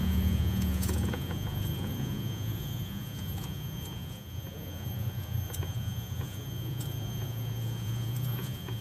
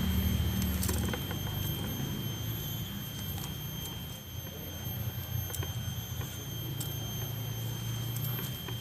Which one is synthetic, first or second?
first